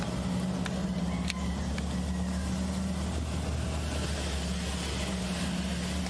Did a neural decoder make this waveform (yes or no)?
no